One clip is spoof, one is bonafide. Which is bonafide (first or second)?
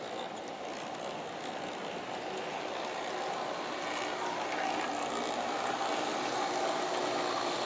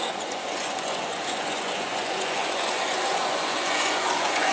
first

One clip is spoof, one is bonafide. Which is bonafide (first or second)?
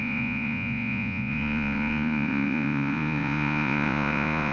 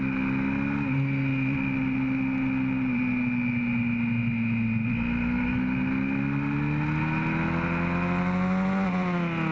second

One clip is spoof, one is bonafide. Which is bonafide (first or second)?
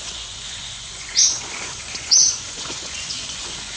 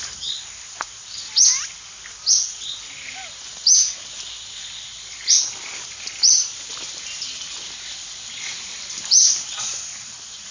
second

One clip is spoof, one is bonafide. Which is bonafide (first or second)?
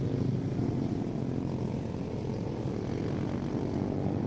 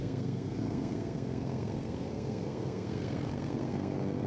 first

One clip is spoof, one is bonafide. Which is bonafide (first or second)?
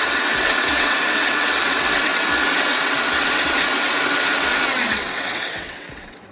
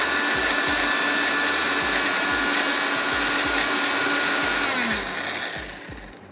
second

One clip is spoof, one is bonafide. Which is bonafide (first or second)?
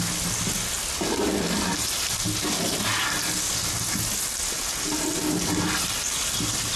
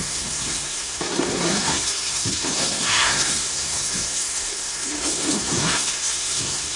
first